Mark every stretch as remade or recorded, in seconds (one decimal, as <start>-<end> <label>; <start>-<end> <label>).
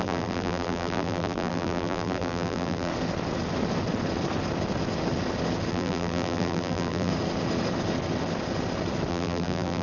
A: 0.0-2.9 remade; 2.9-5.7 recorded; 5.7-7.1 remade; 7.1-9.1 recorded; 9.1-9.8 remade